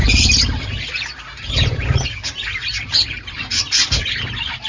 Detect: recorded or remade remade